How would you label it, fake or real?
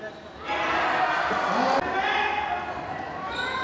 real